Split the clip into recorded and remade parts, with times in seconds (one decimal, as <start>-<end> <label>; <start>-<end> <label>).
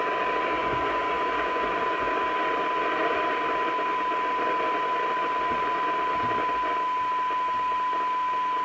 0.0-0.6 recorded; 0.6-2.1 remade; 2.1-8.6 recorded